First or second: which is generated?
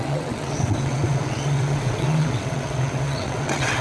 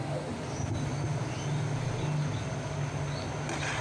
first